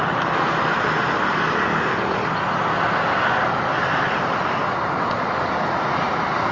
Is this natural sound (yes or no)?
yes